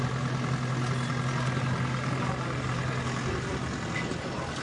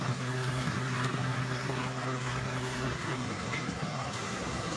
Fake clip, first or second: second